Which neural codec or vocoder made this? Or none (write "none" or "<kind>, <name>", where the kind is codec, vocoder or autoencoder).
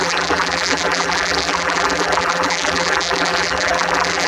vocoder, BigVGAN v2